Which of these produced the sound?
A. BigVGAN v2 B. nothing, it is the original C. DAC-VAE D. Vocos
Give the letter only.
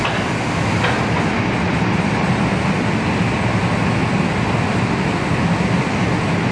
B